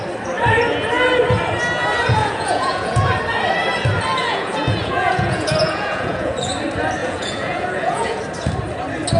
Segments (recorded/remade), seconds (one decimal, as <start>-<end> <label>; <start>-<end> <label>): 0.0-2.2 recorded; 2.2-3.1 remade; 3.1-4.1 recorded; 4.1-6.5 remade; 6.5-7.0 recorded; 7.0-8.2 remade; 8.2-9.2 recorded